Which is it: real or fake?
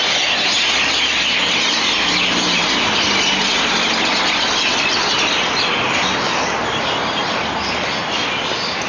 real